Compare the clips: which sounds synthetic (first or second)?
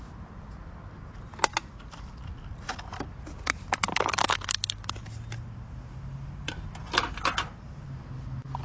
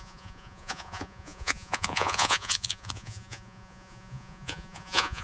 second